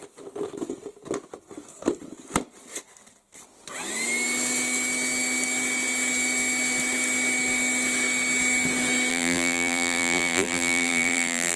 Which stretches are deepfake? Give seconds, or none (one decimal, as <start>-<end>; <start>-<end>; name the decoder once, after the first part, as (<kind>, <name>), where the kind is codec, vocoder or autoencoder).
9.1-11.6 (vocoder, BigVGAN v2)